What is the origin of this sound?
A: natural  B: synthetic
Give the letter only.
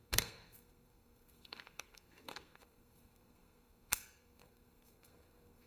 B